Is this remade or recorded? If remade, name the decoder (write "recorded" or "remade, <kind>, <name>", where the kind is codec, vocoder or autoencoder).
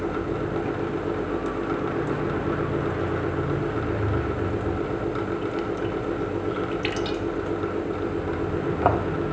recorded